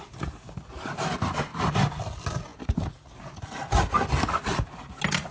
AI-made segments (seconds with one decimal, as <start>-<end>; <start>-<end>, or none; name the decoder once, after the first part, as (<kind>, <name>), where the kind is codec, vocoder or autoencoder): none